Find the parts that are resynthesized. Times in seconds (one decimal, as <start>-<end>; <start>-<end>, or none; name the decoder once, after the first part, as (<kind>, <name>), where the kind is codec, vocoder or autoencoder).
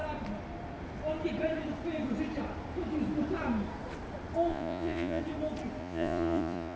4.5-5.2 (vocoder, Vocos); 5.8-6.8